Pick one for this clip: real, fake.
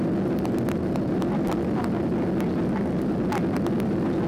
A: real